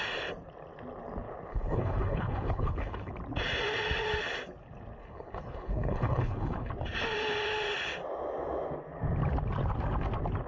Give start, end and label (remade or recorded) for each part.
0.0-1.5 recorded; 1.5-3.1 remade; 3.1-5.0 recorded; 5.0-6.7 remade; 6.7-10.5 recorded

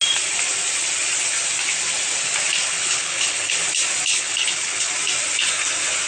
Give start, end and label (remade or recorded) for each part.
0.0-2.7 recorded; 2.7-3.5 remade; 3.5-4.1 recorded; 4.1-4.9 remade; 4.9-6.1 recorded

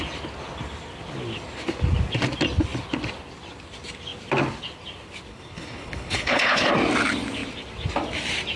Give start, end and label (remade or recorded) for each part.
0.0-5.3 recorded; 5.3-6.7 remade; 6.7-8.6 recorded

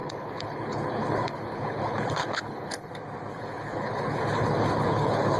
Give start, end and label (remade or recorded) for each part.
0.0-2.9 remade; 2.9-3.3 recorded; 3.3-5.4 remade

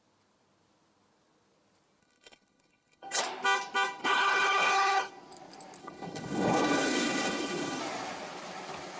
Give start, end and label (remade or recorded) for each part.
0.0-2.0 recorded; 2.0-3.2 remade; 3.2-4.0 recorded; 4.0-5.1 remade; 5.1-5.8 recorded; 5.8-7.8 remade; 7.8-9.0 recorded

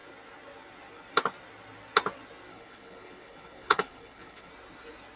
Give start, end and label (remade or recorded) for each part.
0.0-2.5 recorded; 2.5-4.5 remade; 4.5-5.2 recorded